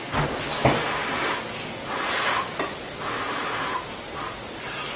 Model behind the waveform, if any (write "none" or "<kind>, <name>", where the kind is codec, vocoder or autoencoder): none